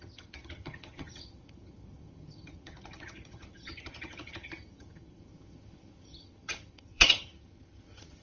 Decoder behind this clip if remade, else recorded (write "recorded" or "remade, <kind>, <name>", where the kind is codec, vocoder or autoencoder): remade, vocoder, HiFi-GAN